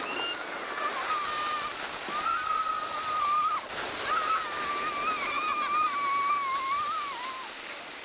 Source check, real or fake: real